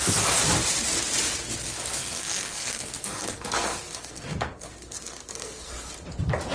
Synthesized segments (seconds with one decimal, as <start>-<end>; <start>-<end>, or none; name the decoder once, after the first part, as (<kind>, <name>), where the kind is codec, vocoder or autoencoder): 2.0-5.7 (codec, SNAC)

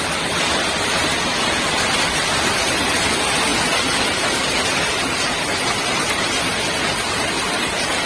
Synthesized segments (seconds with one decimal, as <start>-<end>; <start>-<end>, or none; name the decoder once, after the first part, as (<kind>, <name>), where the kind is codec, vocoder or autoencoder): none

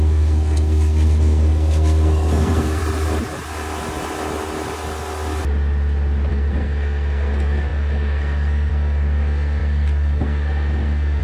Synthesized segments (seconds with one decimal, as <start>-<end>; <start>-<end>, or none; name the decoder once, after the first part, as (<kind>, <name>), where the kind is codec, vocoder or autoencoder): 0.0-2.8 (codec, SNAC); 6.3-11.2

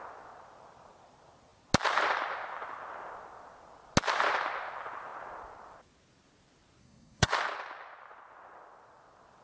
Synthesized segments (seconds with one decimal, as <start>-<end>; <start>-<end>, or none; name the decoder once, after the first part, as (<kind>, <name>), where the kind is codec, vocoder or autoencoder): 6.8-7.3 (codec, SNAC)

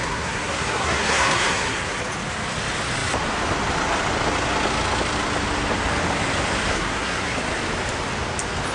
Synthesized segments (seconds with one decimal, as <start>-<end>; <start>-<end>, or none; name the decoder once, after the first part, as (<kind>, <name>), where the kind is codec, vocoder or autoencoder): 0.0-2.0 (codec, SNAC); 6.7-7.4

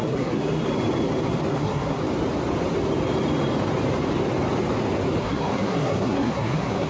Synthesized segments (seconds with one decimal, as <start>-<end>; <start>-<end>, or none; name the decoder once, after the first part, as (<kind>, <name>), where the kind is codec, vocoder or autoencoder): 0.0-0.6 (codec, SNAC); 1.5-2.0; 5.2-6.9